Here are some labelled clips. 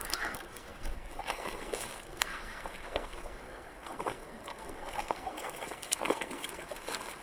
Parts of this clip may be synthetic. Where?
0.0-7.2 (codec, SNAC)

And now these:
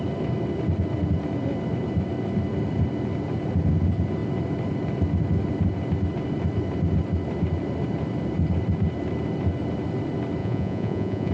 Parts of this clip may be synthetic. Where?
10.4-11.3 (vocoder, Vocos)

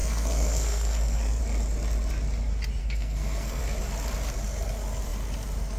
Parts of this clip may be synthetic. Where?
0.0-1.4 (codec, SNAC); 2.8-3.6